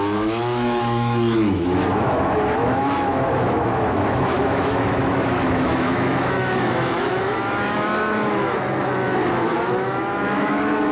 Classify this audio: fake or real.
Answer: fake